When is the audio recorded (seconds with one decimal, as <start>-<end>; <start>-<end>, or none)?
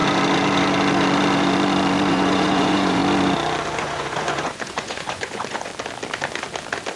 0.0-2.1; 3.0-3.8; 5.7-7.0